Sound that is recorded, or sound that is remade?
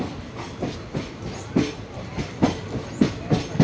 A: recorded